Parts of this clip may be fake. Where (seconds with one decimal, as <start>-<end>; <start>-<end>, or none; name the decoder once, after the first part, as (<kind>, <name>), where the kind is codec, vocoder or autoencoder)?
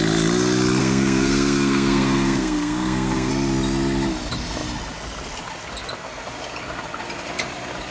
0.8-3.3 (codec, SNAC)